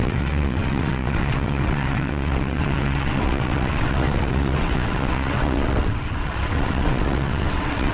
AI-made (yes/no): yes